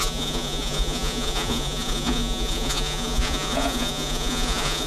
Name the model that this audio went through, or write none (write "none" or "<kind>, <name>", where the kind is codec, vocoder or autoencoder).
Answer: vocoder, Vocos